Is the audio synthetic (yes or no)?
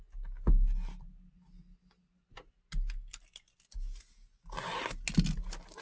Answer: no